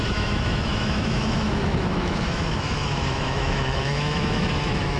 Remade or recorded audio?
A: remade